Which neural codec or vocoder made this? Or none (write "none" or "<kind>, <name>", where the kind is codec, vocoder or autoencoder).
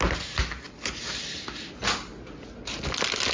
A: none